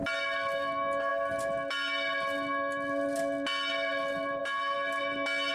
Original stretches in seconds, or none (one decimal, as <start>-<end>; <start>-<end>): 0.0-5.5